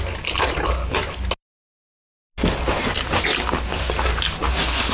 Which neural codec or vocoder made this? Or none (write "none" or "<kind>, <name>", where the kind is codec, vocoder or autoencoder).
none